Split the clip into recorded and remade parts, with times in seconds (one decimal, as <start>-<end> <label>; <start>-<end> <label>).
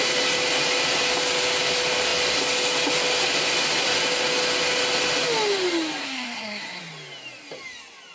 0.0-6.0 recorded; 6.0-6.8 remade; 6.8-8.1 recorded